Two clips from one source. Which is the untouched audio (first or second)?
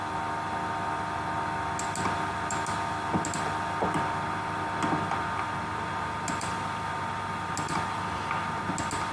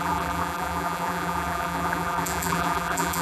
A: first